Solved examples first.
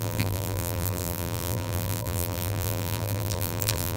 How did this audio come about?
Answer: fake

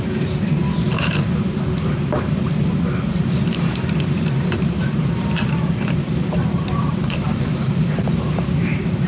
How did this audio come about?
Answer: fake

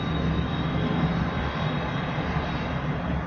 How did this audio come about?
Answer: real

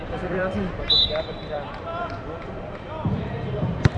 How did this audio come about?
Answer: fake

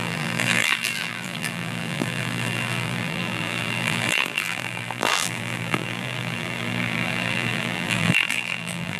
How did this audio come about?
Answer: fake